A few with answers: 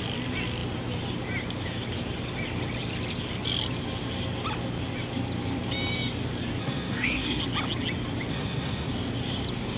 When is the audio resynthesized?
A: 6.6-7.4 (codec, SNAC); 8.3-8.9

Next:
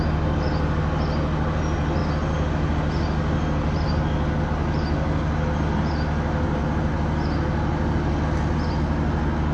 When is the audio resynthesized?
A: none